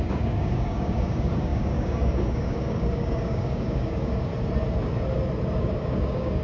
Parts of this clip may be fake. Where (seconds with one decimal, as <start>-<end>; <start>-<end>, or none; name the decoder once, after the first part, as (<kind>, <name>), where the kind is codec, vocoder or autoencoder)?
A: 0.0-4.3 (codec, DAC); 5.6-6.4